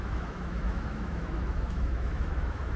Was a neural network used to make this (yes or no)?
yes